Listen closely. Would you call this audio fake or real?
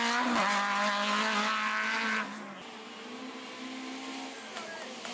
real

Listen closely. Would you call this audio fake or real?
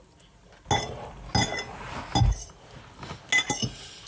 real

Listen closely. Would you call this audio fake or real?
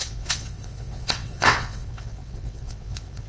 fake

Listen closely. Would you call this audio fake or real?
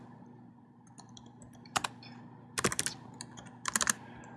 real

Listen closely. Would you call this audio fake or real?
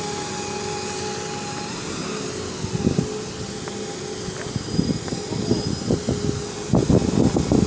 real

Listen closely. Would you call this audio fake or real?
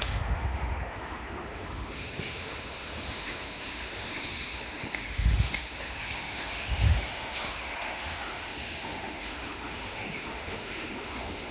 fake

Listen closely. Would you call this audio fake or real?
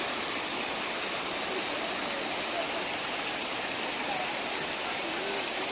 real